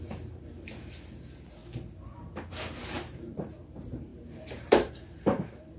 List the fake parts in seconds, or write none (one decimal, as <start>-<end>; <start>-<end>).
0.0-1.6; 2.7-5.8